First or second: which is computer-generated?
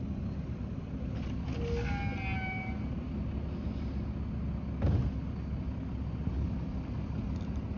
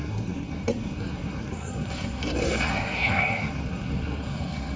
second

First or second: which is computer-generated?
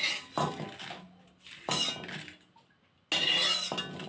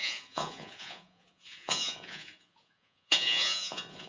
second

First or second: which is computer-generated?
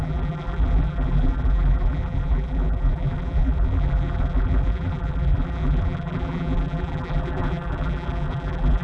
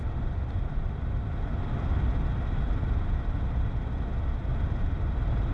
first